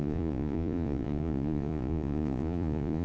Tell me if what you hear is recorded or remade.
remade